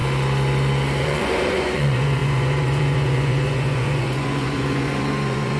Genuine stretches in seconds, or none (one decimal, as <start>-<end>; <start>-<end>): 0.0-1.0